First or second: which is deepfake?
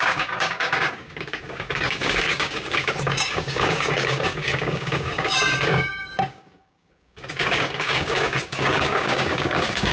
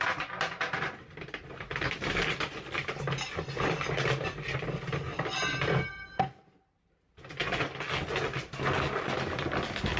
first